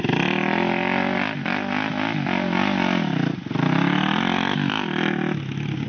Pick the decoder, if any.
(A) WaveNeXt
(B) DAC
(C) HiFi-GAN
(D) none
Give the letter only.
D